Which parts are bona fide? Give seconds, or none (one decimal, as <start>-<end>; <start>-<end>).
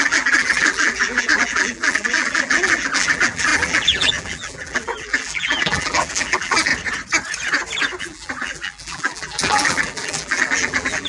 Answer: 6.7-8.0